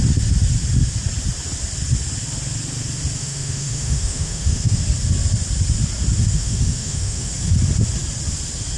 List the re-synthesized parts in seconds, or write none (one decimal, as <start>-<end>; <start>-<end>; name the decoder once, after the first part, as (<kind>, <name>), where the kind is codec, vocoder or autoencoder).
3.2-4.8 (autoencoder, DAC-VAE); 6.3-7.3